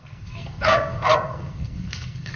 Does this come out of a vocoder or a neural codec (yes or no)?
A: yes